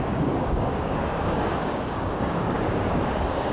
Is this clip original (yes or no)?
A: no